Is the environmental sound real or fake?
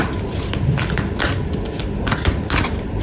real